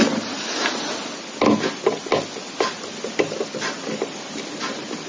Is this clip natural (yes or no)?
yes